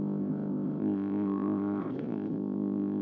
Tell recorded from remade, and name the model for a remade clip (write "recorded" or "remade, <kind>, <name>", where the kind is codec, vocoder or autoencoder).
remade, codec, ZipCodec